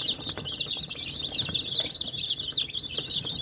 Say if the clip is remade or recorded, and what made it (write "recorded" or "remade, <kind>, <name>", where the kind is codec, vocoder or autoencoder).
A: recorded